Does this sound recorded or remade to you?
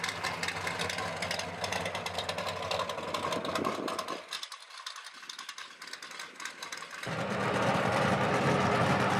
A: recorded